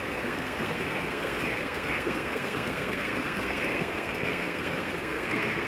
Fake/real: fake